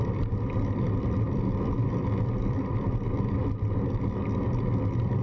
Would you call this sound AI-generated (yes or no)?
no